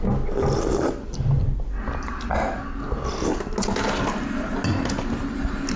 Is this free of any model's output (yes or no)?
yes